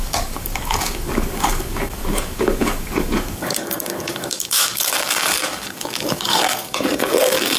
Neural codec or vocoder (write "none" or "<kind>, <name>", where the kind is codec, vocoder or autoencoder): codec, DAC